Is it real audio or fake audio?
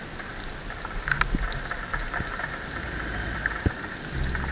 real